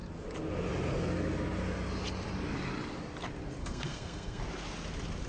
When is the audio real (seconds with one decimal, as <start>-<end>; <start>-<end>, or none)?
0.0-3.6; 4.4-5.3